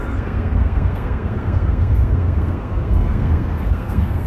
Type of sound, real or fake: fake